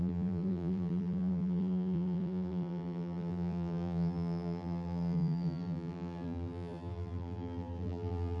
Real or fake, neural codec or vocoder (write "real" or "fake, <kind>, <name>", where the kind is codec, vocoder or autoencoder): fake, vocoder, BigVGAN v2